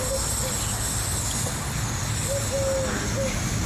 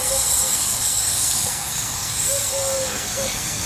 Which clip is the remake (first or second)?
second